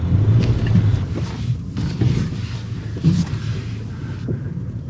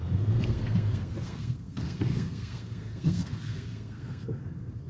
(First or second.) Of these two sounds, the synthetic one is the second